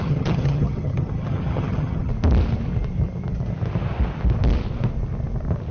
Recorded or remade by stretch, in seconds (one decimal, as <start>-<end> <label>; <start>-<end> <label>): 0.0-2.1 remade; 2.1-5.7 recorded

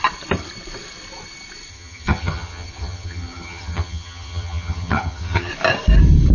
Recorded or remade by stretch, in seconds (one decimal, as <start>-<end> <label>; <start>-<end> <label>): 0.0-1.7 recorded; 1.7-5.5 remade; 5.5-6.3 recorded

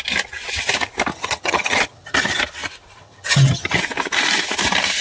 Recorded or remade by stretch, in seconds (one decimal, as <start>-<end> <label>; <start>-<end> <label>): 0.0-1.1 recorded; 1.1-2.4 remade; 2.4-3.0 recorded; 3.0-3.8 remade; 3.8-5.0 recorded

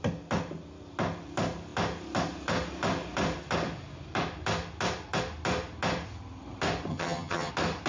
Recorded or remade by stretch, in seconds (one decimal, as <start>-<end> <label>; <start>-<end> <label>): 0.0-6.9 recorded; 6.9-7.5 remade; 7.5-7.9 recorded

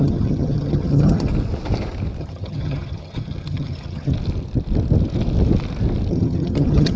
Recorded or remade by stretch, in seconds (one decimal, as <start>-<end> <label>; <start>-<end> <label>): 0.0-1.3 remade; 1.3-2.2 recorded; 2.2-4.1 remade; 4.1-6.1 recorded; 6.1-7.0 remade

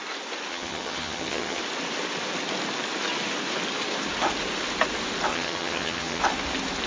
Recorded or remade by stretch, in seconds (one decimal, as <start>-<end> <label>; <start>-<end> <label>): 0.0-0.5 recorded; 0.5-1.6 remade; 1.6-5.3 recorded; 5.3-6.2 remade; 6.2-6.9 recorded

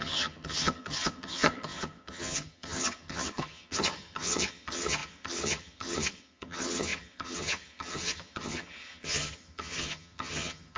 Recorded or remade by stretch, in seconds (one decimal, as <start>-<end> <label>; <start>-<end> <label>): 0.0-10.8 remade

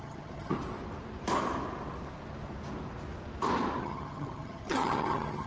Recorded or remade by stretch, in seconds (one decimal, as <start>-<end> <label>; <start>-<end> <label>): 0.0-0.5 remade; 0.5-3.8 recorded; 3.8-5.5 remade